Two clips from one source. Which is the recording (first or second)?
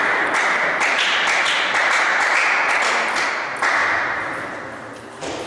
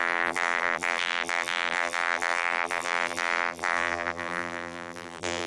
first